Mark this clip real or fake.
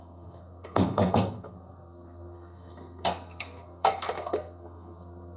fake